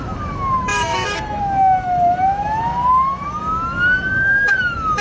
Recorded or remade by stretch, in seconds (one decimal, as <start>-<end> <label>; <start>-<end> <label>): 0.0-5.0 remade

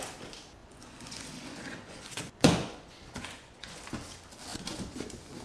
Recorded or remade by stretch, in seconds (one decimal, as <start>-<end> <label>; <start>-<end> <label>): 0.0-0.6 recorded; 0.6-3.8 remade; 3.8-4.5 recorded; 4.5-5.4 remade

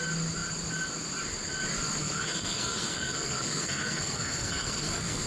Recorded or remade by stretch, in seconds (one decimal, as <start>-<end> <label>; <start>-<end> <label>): 0.0-2.0 recorded; 2.0-5.3 remade

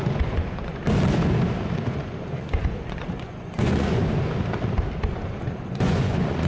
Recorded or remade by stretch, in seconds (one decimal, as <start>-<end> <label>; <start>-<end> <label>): 0.0-0.8 remade; 0.8-1.9 recorded; 1.9-4.0 remade; 4.0-5.1 recorded; 5.1-6.5 remade

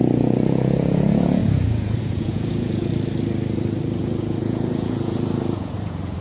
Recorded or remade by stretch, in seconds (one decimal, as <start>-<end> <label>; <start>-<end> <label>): 0.0-2.9 remade; 2.9-4.0 recorded; 4.0-6.2 remade

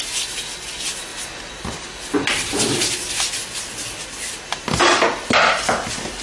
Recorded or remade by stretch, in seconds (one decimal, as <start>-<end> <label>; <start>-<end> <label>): 0.0-6.2 recorded

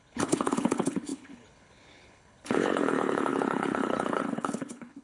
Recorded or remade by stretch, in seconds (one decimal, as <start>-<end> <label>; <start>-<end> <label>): 0.0-5.0 remade